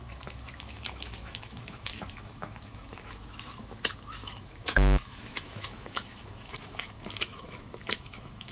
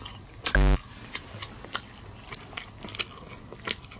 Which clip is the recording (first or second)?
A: second